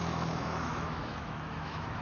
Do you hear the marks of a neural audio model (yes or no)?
yes